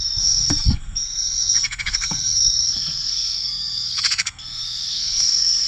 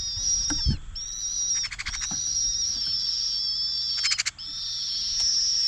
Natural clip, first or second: second